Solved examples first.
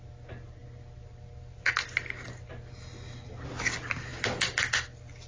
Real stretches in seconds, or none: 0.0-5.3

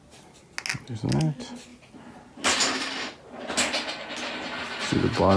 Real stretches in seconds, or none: 0.0-5.4

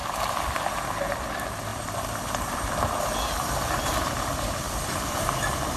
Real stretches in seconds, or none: 0.0-1.7; 5.2-5.8

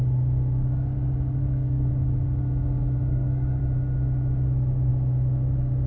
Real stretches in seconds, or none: 0.0-1.4; 1.9-3.1; 3.6-5.9

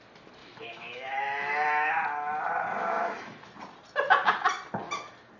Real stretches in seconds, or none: 0.0-0.4; 1.9-2.8; 3.5-5.4

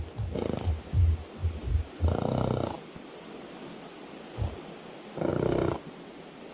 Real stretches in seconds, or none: 0.0-6.5

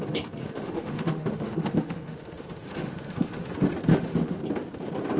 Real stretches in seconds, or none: 0.0-0.4; 3.5-3.9; 4.4-5.2